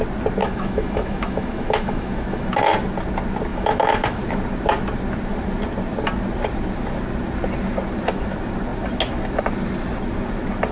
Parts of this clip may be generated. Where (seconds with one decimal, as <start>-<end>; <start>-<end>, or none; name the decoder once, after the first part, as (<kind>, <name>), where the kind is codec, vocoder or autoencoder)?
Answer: 0.4-2.5 (autoencoder, DAC-VAE); 3.5-4.2